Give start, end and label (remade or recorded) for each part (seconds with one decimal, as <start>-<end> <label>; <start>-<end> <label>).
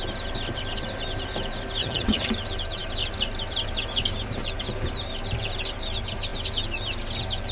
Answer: 0.0-1.8 recorded; 1.8-2.3 remade; 2.3-7.5 recorded